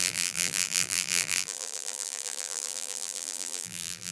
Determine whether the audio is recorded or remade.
remade